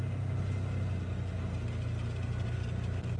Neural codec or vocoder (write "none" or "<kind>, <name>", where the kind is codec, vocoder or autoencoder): none